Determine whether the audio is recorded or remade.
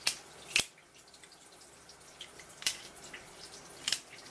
recorded